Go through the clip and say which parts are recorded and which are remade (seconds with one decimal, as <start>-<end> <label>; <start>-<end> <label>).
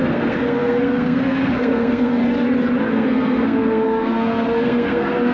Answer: 0.0-2.2 remade; 2.2-2.8 recorded; 2.8-5.3 remade